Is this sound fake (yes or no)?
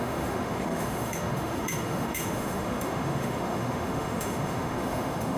yes